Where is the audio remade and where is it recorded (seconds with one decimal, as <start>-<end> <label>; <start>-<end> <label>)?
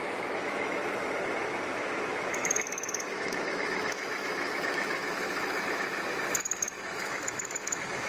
0.0-8.1 remade